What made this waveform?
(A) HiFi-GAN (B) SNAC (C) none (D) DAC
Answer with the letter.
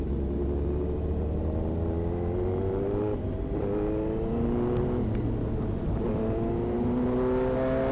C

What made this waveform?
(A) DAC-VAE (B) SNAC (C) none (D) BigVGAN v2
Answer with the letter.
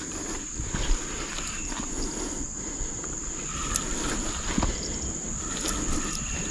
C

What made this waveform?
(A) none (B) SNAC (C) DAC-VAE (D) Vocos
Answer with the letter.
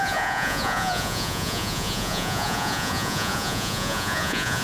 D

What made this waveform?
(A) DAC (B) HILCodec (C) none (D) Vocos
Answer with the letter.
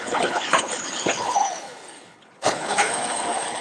B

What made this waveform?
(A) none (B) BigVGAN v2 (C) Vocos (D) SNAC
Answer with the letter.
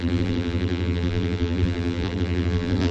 B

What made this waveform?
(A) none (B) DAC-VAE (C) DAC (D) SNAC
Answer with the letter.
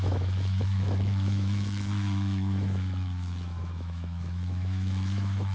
B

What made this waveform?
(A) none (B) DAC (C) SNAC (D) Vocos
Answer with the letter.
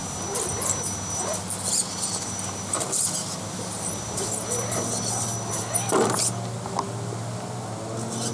A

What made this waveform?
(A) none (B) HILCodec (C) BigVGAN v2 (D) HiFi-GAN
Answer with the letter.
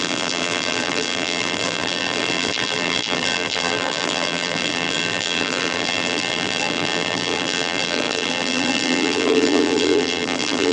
C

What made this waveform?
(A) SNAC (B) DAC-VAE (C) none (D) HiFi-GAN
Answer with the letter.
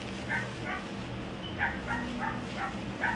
C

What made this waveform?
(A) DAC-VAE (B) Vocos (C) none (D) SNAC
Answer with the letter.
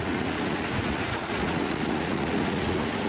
B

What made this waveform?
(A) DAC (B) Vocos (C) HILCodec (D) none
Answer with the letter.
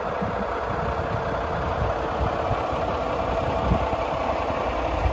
D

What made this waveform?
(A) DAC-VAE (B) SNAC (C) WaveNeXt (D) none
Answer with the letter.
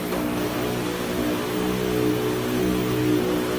D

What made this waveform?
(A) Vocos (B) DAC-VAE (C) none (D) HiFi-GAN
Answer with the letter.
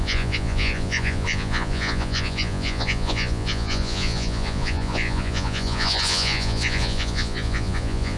A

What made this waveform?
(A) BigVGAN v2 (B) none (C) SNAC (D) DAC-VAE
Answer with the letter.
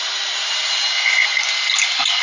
B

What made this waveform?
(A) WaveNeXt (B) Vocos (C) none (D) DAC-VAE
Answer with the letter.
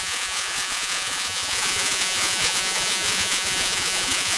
B